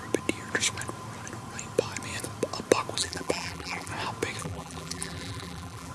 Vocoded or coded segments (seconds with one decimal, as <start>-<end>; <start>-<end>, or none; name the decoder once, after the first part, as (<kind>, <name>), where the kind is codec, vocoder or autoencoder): 3.0-3.9 (vocoder, BigVGAN v2); 4.4-5.9